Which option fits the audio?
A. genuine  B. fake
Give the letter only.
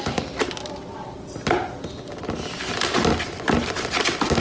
A